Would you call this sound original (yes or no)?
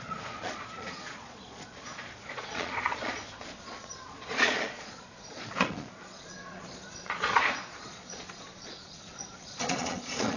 no